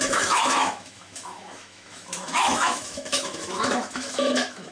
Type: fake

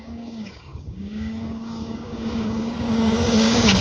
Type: fake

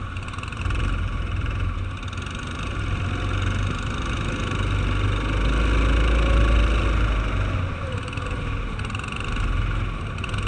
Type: real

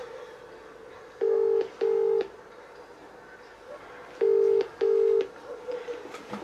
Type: real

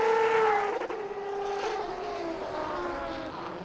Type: real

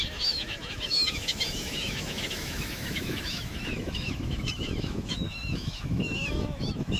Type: fake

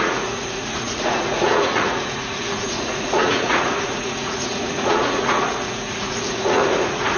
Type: fake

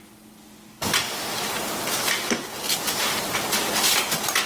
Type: fake